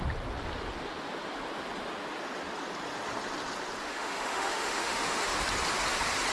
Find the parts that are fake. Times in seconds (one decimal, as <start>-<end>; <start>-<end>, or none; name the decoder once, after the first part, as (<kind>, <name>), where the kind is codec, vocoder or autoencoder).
3.8-5.3 (autoencoder, DAC-VAE)